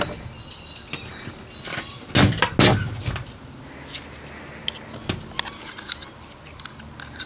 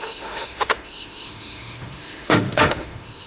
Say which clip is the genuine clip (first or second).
first